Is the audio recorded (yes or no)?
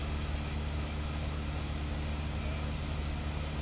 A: yes